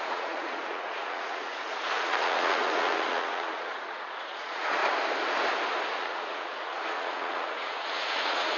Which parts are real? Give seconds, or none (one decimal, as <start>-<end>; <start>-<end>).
4.8-5.9